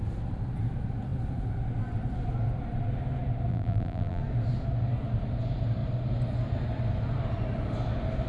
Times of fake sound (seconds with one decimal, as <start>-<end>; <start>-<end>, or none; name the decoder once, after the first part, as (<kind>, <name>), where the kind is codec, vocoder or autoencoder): 3.5-4.2 (vocoder, BigVGAN v2)